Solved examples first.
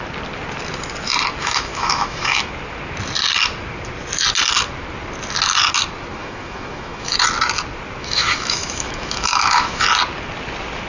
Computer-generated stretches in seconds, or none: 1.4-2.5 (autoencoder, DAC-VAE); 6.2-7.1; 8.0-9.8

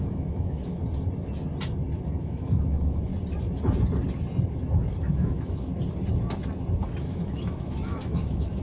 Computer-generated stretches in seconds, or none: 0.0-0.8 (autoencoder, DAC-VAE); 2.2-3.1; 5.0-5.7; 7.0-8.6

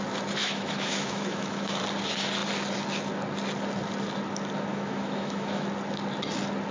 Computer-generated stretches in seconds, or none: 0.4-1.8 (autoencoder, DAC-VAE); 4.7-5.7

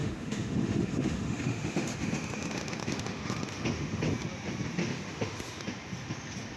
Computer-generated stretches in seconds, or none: 0.0-4.0 (autoencoder, DAC-VAE); 4.8-5.6